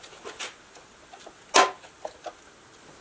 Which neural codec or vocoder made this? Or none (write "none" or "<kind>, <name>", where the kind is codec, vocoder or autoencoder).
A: none